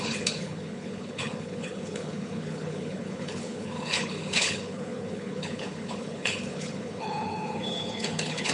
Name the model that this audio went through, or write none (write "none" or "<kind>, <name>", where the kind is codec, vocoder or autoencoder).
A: codec, HILCodec